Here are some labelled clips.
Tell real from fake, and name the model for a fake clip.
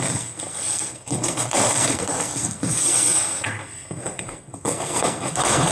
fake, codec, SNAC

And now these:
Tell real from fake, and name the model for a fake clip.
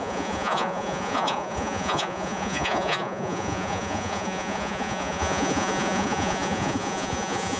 fake, vocoder, Vocos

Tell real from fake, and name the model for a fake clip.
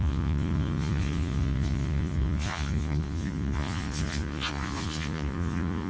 fake, vocoder, Vocos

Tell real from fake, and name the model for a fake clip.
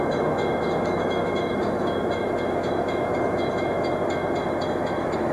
fake, autoencoder, DAC-VAE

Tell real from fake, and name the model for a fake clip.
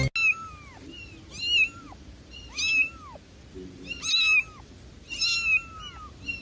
real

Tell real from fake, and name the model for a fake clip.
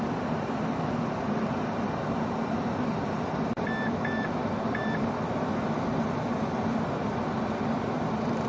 real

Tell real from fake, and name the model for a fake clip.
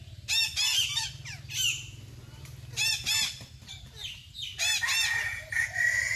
real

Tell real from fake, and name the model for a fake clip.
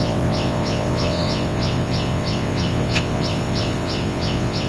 fake, vocoder, WaveNeXt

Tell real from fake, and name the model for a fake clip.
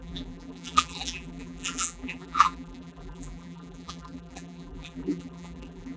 fake, vocoder, BigVGAN v2